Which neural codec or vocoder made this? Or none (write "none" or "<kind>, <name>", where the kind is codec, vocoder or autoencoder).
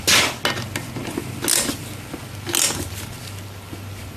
none